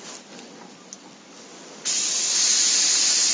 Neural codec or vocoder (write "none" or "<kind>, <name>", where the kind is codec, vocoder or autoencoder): none